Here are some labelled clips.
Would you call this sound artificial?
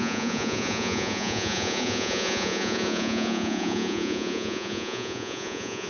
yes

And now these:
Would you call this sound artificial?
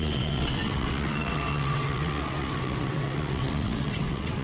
yes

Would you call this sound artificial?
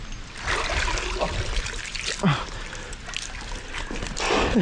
no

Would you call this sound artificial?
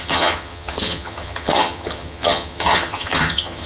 yes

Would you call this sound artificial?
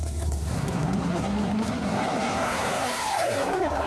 yes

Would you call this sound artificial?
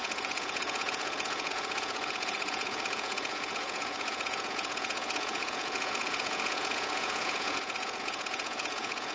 yes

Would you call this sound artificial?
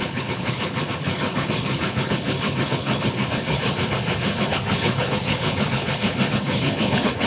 yes